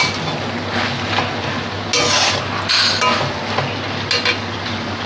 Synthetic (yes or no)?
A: no